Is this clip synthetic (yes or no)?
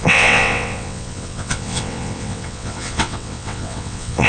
yes